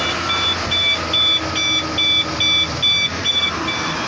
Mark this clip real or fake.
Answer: real